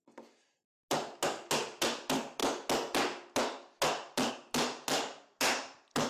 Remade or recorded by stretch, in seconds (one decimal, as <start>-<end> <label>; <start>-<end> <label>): 0.0-6.1 recorded